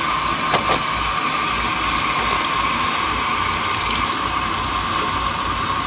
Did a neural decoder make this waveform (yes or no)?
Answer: no